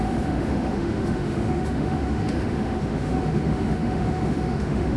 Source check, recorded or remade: remade